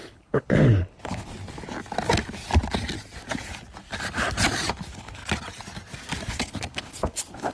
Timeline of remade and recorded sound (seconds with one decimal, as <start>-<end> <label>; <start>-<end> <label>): 0.0-1.3 remade; 1.3-4.7 recorded; 4.7-5.2 remade; 5.2-6.3 recorded; 6.3-7.5 remade